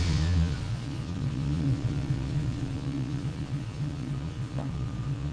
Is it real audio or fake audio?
fake